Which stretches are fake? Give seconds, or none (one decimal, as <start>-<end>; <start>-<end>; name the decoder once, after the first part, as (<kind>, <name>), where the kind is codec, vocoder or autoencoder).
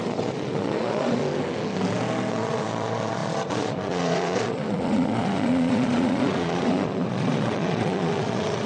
0.0-1.2 (vocoder, Vocos); 2.3-8.7